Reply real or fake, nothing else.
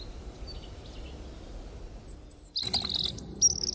real